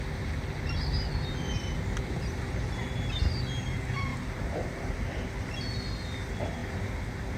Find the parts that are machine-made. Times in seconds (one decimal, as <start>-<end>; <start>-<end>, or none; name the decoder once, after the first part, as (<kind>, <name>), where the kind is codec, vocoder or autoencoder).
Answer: 4.1-5.0 (vocoder, BigVGAN v2)